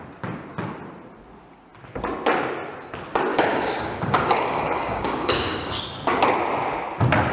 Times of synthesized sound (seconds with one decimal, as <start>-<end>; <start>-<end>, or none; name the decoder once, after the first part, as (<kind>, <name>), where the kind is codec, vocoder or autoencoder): 3.3-5.8 (codec, DAC)